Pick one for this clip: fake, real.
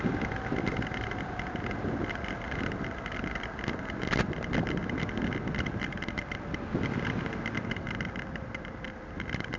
real